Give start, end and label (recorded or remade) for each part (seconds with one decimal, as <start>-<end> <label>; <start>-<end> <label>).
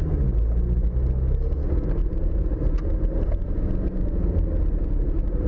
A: 0.0-2.0 recorded; 2.0-5.5 remade